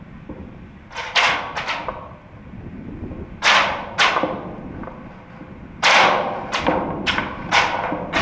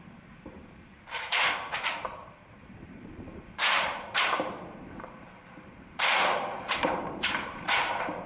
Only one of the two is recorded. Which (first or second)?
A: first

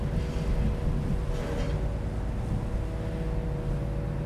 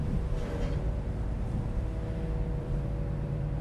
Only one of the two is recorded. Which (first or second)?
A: first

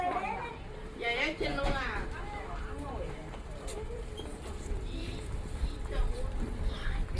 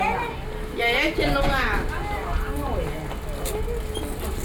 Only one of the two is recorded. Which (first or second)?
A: second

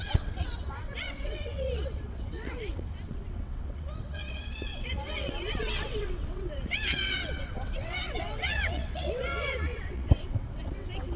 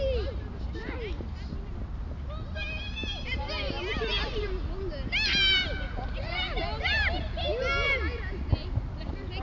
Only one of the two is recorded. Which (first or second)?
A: second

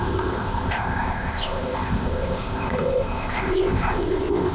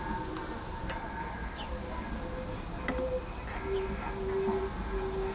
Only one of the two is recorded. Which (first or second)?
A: second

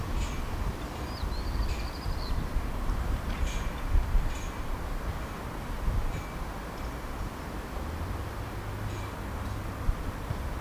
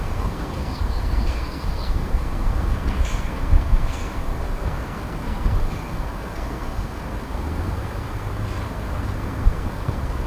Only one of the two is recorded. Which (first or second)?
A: first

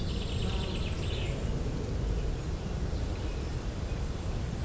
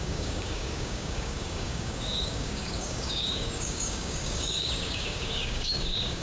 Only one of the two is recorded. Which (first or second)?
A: first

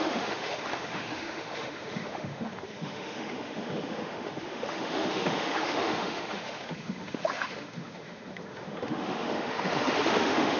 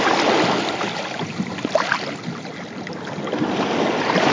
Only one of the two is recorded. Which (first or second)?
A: second